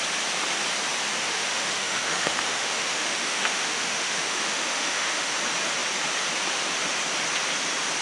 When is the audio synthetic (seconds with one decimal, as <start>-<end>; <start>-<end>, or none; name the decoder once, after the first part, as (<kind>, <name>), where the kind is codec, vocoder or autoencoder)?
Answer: 1.2-5.3 (autoencoder, DAC-VAE)

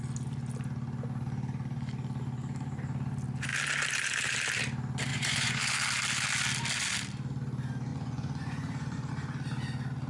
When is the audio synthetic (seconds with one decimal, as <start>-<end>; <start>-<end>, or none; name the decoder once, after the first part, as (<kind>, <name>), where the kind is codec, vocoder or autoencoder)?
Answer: 5.1-5.6 (vocoder, Vocos); 7.9-9.1

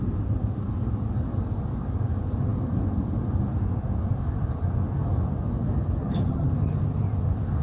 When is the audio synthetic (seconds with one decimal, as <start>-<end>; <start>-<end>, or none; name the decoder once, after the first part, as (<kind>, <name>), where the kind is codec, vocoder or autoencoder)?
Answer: 6.0-6.5 (vocoder, HiFi-GAN)

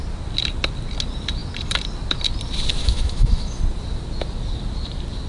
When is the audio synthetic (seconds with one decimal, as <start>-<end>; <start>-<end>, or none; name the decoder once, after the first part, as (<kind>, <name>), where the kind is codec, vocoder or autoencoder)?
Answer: 2.8-3.6 (autoencoder, DAC-VAE)

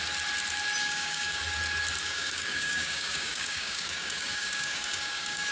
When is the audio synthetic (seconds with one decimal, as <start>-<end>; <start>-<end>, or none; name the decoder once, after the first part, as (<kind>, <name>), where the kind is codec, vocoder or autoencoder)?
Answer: 0.8-1.4 (codec, DAC); 2.0-5.5

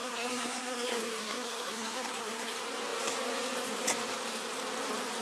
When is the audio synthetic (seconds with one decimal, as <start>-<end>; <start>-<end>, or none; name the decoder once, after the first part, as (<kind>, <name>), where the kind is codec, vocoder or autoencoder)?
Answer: 0.0-2.5 (codec, SNAC)

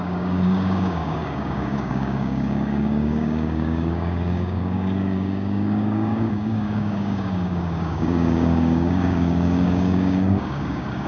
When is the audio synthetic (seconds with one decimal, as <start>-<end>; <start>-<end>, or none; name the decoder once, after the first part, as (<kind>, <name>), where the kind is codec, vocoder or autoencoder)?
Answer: 0.0-11.1 (codec, DAC)